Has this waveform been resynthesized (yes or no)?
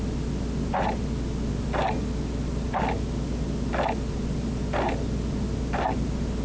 no